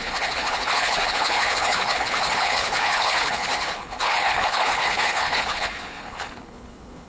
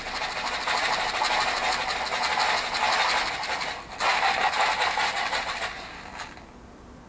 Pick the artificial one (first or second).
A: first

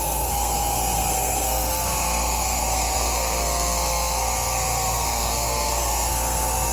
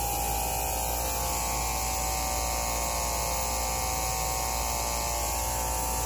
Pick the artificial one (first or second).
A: first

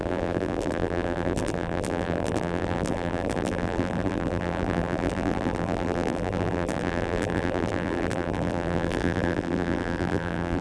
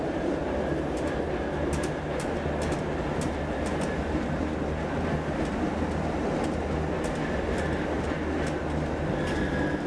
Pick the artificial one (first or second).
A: first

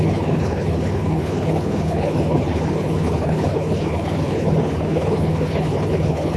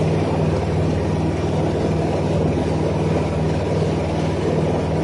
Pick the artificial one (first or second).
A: first